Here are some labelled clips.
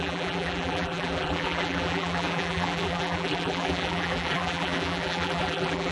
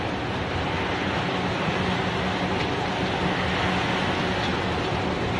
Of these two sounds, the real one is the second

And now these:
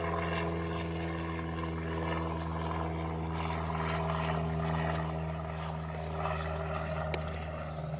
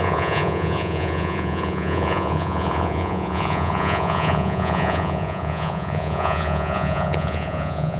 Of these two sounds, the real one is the first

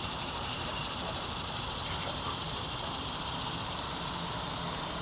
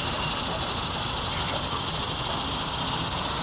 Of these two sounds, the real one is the second